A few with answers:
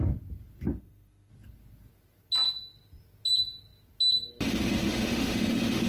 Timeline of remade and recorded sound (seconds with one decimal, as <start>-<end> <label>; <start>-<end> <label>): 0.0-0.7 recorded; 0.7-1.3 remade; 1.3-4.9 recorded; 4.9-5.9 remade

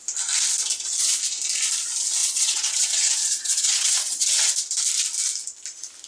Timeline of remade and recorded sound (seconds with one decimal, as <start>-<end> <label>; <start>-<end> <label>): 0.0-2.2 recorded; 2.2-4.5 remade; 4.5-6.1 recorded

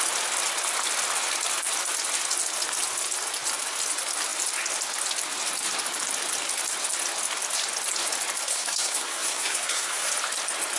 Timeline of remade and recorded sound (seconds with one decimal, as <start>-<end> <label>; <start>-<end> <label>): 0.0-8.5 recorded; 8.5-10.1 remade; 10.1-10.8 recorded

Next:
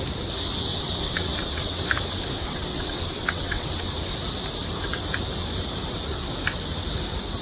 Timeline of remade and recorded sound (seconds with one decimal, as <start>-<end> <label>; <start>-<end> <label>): 0.0-0.7 recorded; 0.7-1.8 remade; 1.8-2.4 recorded; 2.4-4.1 remade; 4.1-7.4 recorded

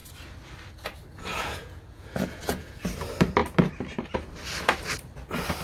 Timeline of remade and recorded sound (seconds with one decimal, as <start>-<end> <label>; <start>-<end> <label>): 0.0-1.1 recorded; 1.1-2.8 remade; 2.8-5.6 recorded